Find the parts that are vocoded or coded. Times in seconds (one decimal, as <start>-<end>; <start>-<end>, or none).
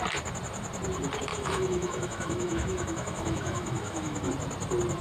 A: 1.3-4.3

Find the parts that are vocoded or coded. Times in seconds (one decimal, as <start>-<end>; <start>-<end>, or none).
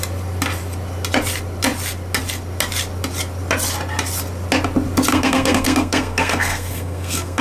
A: 5.1-7.4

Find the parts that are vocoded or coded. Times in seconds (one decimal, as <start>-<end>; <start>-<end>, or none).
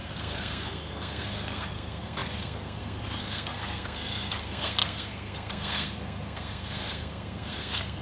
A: 0.0-8.0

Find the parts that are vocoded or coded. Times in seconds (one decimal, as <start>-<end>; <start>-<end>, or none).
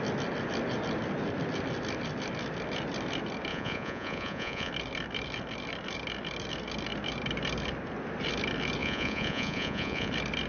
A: 3.5-4.7; 8.8-10.1